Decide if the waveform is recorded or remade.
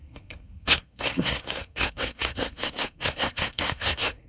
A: remade